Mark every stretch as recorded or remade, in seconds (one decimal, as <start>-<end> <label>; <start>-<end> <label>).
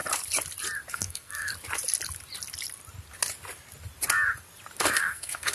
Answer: 0.0-0.9 recorded; 0.9-1.5 remade; 1.5-4.8 recorded; 4.8-5.5 remade